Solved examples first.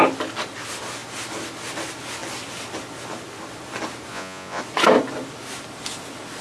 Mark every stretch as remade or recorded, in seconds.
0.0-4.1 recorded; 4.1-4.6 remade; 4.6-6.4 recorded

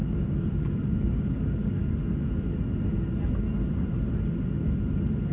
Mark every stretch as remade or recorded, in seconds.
0.0-2.2 remade; 2.2-5.3 recorded

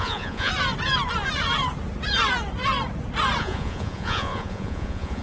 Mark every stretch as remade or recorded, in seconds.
0.0-0.5 remade; 0.5-3.4 recorded; 3.4-5.2 remade

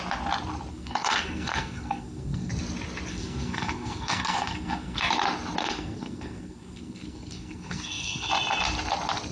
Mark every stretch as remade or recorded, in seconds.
0.0-0.7 recorded; 0.7-2.5 remade; 2.5-3.1 recorded; 3.1-5.1 remade; 5.1-5.6 recorded; 5.6-8.3 remade; 8.3-9.3 recorded

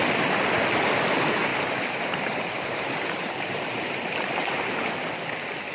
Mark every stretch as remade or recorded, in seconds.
0.0-1.5 recorded; 1.5-4.9 remade; 4.9-5.7 recorded

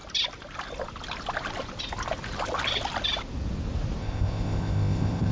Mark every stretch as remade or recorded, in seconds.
0.0-4.0 recorded; 4.0-5.3 remade